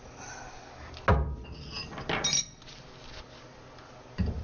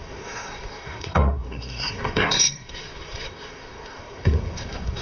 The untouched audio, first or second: first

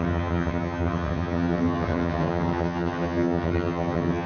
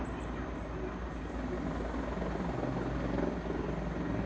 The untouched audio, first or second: second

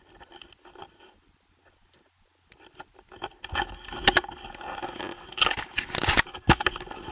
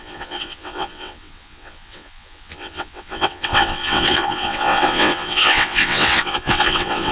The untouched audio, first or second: first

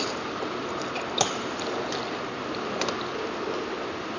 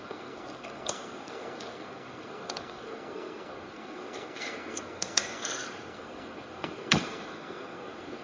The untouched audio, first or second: first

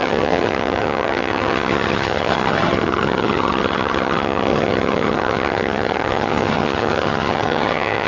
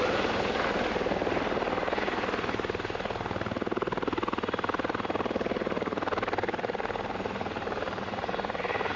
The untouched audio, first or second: second